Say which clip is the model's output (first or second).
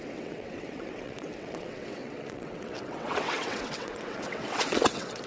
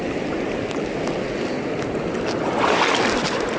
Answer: first